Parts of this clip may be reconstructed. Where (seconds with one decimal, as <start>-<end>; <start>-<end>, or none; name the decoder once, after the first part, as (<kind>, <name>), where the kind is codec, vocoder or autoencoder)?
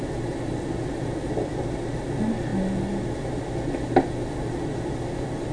none